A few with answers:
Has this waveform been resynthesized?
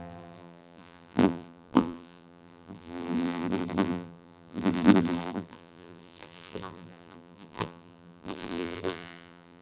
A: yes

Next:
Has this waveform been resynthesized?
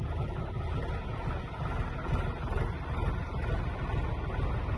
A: no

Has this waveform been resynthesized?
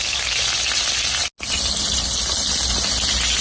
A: no